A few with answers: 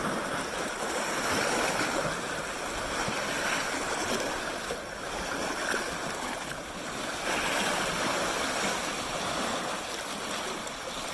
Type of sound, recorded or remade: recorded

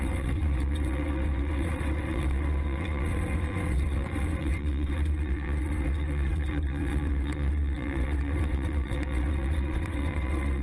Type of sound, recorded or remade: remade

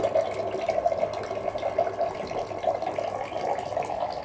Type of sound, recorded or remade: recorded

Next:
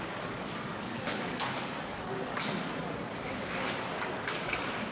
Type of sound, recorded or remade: remade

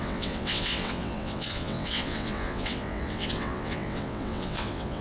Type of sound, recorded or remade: remade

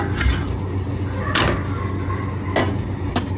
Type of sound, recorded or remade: recorded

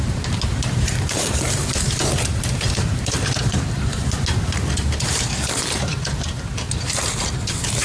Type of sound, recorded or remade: remade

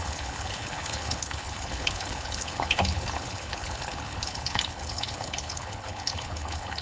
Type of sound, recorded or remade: remade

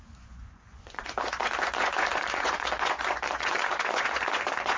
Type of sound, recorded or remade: remade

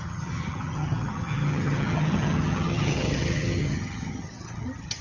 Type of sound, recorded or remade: remade